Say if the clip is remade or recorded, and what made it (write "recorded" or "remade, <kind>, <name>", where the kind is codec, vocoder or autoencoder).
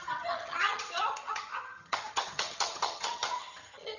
remade, vocoder, HiFi-GAN